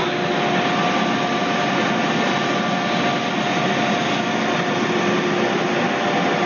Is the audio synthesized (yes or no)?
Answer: no